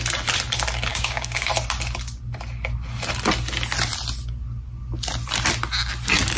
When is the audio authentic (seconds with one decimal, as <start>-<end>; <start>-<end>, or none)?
0.0-0.9; 1.5-6.4